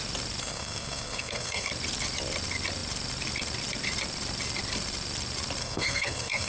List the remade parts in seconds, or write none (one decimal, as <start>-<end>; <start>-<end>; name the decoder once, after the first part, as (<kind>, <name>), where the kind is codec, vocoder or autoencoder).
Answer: 0.4-1.7 (codec, SNAC); 5.6-6.5